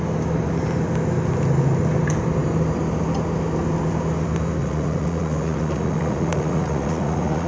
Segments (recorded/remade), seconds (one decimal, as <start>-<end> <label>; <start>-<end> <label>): 0.0-4.6 recorded; 4.6-7.5 remade